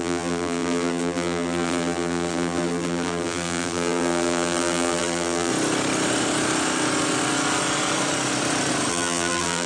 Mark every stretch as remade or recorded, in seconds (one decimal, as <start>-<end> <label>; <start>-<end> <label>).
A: 0.0-5.5 remade; 5.5-8.9 recorded; 8.9-9.7 remade